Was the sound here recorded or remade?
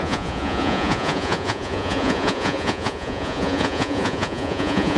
remade